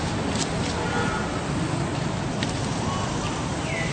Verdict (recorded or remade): recorded